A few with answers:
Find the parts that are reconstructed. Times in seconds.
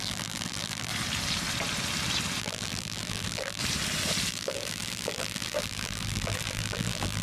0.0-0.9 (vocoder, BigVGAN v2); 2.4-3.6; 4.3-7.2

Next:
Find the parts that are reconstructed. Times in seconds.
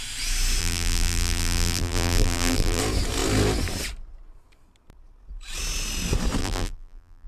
0.6-2.8 (vocoder, BigVGAN v2); 6.4-7.3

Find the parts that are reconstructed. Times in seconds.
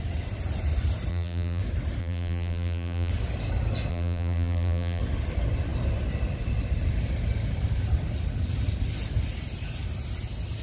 1.1-1.6 (vocoder, BigVGAN v2); 2.0-3.1; 3.9-5.0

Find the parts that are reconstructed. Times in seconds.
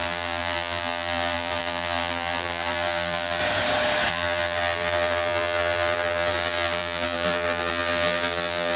0.0-3.4 (vocoder, BigVGAN v2); 4.1-8.8